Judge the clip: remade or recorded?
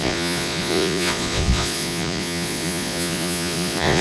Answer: remade